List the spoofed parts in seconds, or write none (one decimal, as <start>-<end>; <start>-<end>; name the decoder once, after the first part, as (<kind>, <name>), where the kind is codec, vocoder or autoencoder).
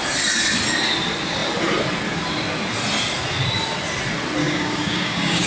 4.4-5.5 (codec, DAC)